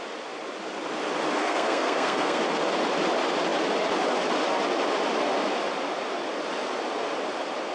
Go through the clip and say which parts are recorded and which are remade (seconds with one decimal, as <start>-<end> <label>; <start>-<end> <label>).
0.0-1.4 recorded; 1.4-2.4 remade; 2.4-7.7 recorded